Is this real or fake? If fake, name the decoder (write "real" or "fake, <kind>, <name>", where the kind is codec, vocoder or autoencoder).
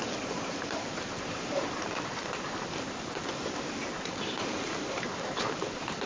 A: fake, vocoder, BigVGAN v2